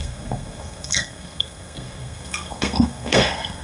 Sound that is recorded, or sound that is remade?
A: remade